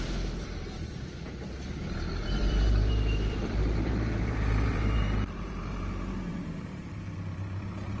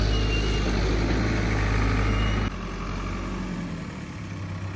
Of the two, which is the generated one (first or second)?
first